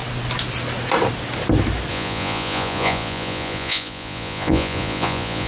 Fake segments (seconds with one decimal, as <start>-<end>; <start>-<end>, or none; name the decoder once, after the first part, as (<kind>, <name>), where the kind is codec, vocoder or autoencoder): 1.9-5.5 (vocoder, Vocos)